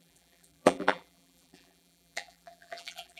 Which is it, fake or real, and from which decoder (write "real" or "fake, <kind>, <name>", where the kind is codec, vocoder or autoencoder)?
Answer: fake, vocoder, BigVGAN v2